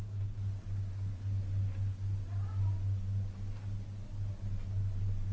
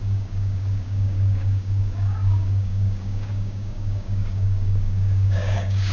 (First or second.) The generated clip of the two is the second